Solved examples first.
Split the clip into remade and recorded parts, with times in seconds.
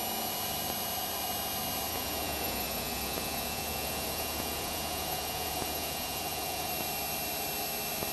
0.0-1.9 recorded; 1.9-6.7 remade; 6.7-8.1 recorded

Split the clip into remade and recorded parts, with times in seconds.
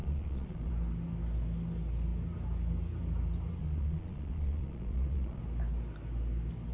0.0-0.7 remade; 0.7-3.6 recorded; 3.6-5.4 remade; 5.4-6.7 recorded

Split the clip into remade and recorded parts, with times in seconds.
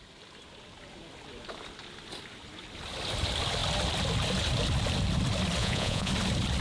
0.0-5.6 recorded; 5.6-6.1 remade; 6.1-6.6 recorded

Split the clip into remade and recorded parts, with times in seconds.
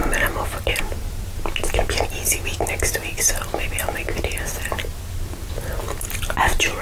0.0-6.8 recorded